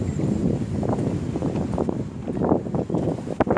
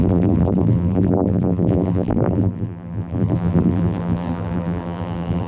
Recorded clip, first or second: first